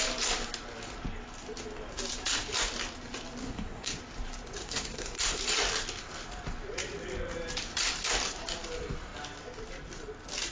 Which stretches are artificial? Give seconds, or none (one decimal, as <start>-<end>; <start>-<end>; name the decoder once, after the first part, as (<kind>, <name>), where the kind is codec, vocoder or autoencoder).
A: 3.4-4.0 (codec, SNAC); 4.6-5.4